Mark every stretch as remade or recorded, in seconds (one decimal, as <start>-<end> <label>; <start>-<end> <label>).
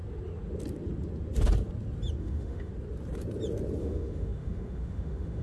0.0-2.2 recorded; 2.2-2.7 remade; 2.7-3.8 recorded; 3.8-5.4 remade